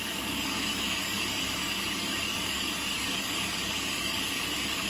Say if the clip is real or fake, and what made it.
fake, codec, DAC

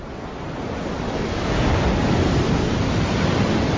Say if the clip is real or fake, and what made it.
real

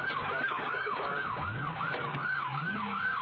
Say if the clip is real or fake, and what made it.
fake, codec, DAC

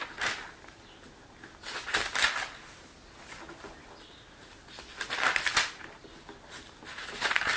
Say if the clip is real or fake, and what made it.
real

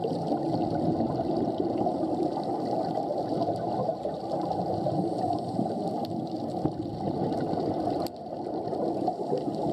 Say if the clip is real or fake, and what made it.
real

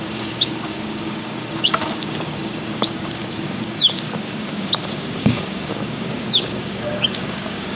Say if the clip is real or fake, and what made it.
fake, codec, DAC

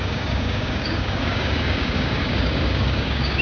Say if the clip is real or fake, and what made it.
fake, codec, DAC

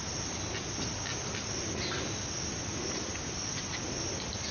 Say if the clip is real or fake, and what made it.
real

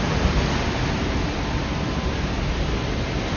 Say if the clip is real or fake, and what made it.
real